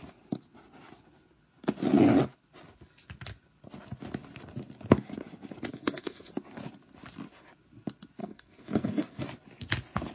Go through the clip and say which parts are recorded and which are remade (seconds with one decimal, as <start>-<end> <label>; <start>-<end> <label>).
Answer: 0.0-5.7 recorded; 5.7-6.3 remade; 6.3-8.2 recorded; 8.2-9.2 remade; 9.2-10.1 recorded